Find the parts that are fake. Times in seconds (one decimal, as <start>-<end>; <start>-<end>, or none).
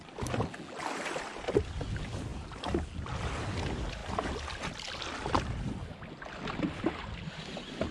none